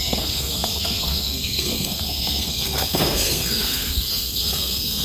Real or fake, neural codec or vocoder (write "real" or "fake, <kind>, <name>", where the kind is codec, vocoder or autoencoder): fake, codec, SNAC